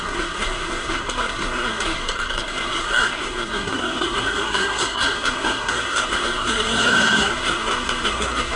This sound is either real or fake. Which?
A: fake